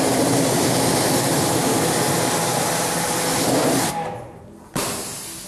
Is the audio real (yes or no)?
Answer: yes